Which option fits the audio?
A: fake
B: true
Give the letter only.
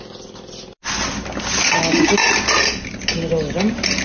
B